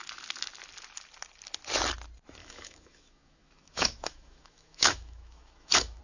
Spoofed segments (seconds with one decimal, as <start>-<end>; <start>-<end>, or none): 2.4-6.0